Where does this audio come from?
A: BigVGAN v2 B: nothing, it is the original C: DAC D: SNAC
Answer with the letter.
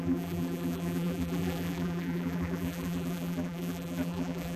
A